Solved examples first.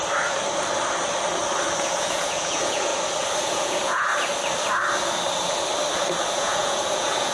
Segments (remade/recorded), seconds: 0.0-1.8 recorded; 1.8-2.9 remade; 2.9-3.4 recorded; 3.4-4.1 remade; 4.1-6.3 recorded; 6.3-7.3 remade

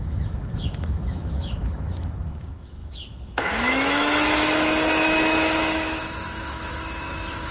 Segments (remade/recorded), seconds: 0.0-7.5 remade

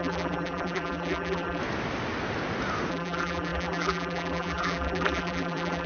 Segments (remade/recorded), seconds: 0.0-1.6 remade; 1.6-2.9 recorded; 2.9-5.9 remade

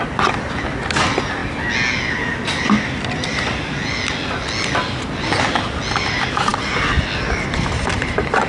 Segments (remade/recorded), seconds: 0.0-8.5 recorded

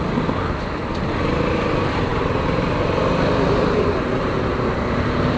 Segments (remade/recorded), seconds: 0.0-5.4 recorded